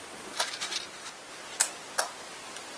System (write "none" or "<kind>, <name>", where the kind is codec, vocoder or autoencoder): none